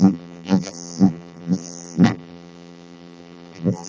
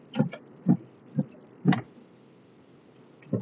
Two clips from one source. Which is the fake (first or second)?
first